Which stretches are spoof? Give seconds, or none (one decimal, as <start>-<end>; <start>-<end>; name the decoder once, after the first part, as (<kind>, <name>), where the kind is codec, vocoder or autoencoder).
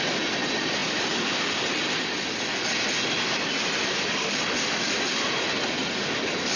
none